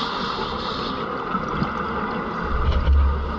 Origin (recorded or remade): recorded